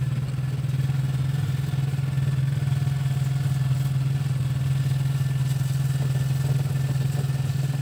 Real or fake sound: real